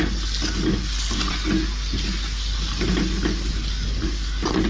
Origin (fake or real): real